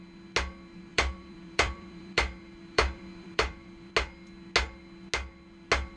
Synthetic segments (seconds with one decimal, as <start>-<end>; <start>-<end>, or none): 0.9-3.9